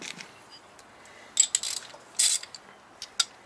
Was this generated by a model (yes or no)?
no